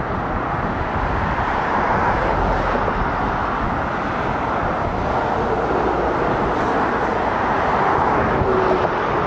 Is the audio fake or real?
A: real